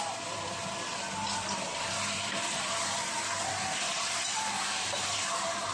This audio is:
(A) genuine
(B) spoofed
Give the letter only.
B